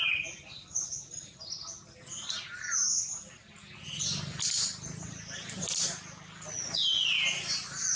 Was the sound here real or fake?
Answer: real